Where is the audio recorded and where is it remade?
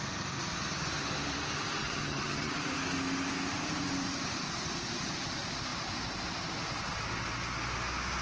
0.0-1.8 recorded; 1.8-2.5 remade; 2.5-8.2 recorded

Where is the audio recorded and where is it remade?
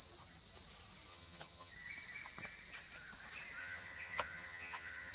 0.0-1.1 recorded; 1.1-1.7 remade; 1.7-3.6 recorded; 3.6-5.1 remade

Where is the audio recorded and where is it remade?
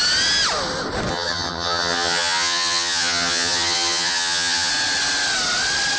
0.0-1.1 recorded; 1.1-4.7 remade; 4.7-6.0 recorded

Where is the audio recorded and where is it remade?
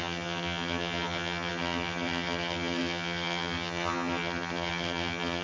0.0-5.4 remade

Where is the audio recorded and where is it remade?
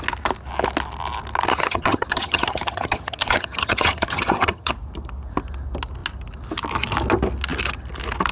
0.0-1.5 recorded; 1.5-4.7 remade; 4.7-8.3 recorded